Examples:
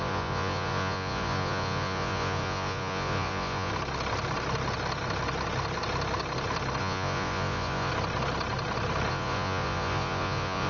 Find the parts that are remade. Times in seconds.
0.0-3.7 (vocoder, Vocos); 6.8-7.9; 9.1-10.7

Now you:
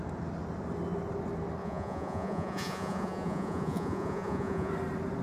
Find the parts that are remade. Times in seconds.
1.6-4.7 (vocoder, Vocos)

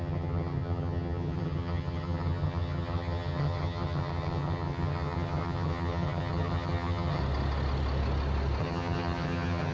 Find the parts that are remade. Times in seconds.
0.0-7.2 (vocoder, HiFi-GAN); 8.6-9.7

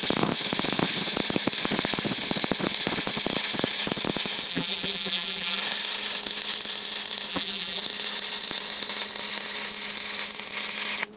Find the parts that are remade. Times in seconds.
4.5-5.6 (vocoder, BigVGAN v2); 7.3-7.8

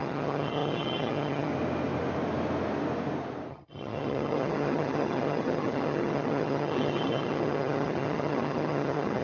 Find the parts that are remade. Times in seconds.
0.0-1.5 (vocoder, HiFi-GAN); 3.5-9.2

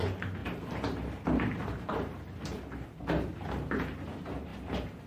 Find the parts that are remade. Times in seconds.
0.0-5.1 (vocoder, BigVGAN v2)